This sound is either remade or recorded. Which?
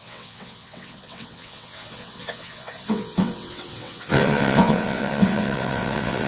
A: remade